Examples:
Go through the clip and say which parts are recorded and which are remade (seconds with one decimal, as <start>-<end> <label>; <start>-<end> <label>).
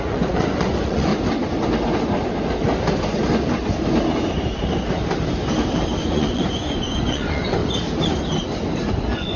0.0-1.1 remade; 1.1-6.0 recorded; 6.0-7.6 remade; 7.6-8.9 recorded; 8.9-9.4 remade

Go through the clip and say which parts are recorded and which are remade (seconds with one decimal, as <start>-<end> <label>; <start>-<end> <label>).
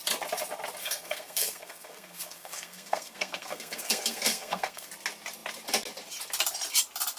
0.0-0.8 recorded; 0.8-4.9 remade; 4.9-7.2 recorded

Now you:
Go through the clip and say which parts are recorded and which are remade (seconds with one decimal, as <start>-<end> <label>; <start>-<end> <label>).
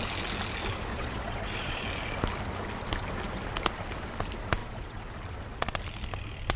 0.0-0.9 recorded; 0.9-1.8 remade; 1.8-4.6 recorded; 4.6-5.1 remade; 5.1-6.6 recorded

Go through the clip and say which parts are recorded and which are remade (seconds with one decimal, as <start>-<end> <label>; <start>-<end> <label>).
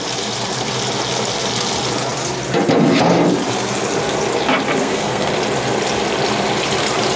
0.0-4.8 recorded; 4.8-5.3 remade; 5.3-7.2 recorded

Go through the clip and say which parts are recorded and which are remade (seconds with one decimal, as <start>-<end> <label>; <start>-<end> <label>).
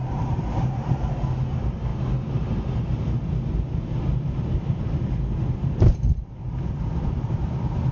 0.0-3.9 recorded; 3.9-7.9 remade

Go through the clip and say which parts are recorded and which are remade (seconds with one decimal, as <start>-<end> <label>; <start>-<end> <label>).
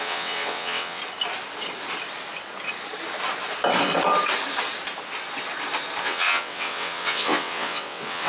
0.0-1.0 remade; 1.0-6.0 recorded; 6.0-8.3 remade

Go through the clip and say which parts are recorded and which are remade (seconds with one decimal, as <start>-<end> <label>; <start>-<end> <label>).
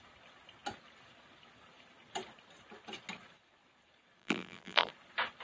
0.0-4.2 recorded; 4.2-4.9 remade; 4.9-5.4 recorded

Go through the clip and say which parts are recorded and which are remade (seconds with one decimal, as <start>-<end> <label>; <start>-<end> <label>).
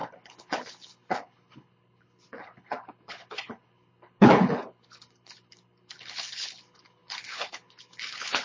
0.0-8.4 remade